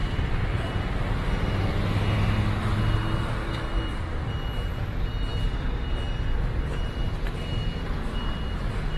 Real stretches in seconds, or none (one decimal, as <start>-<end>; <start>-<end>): 0.0-9.0